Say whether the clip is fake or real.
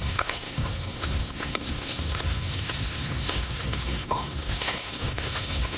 fake